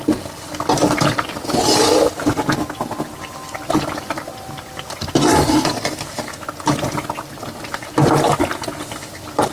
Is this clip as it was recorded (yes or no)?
yes